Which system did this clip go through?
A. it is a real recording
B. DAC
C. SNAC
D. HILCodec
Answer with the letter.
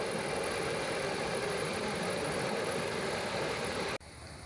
A